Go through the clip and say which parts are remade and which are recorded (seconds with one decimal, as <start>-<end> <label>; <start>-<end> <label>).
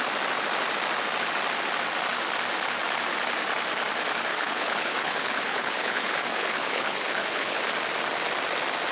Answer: 0.0-4.3 recorded; 4.3-7.6 remade; 7.6-8.9 recorded